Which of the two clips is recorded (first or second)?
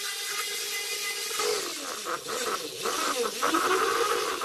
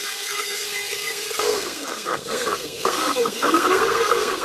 first